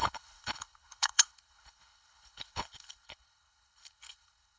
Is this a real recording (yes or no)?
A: no